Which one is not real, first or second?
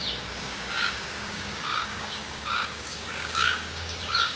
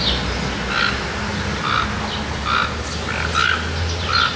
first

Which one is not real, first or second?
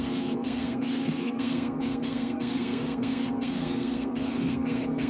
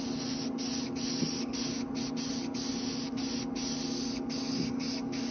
first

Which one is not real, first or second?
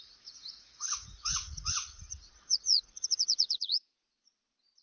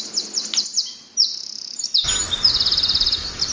first